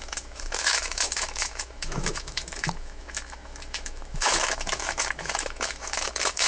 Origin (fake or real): fake